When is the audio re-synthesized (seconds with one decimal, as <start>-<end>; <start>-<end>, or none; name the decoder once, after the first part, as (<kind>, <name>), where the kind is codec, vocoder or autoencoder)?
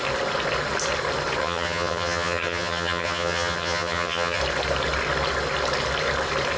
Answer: 1.4-4.4 (vocoder, HiFi-GAN)